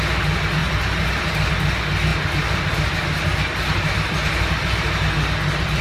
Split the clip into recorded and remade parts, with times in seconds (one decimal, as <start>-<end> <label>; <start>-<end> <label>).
0.0-0.6 recorded; 0.6-1.5 remade; 1.5-2.1 recorded; 2.1-5.8 remade